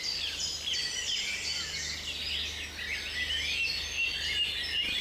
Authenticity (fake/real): real